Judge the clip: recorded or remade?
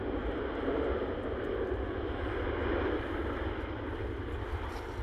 recorded